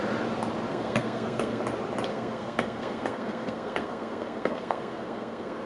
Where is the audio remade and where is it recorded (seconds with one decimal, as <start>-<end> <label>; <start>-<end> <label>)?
0.0-0.7 recorded; 0.7-1.6 remade; 1.6-2.1 recorded; 2.1-5.7 remade